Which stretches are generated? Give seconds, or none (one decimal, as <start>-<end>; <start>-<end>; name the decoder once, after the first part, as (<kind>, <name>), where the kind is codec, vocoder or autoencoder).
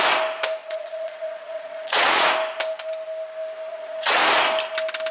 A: 0.6-2.3 (vocoder, Vocos); 3.7-4.2